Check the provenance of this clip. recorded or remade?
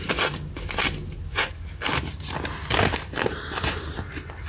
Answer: recorded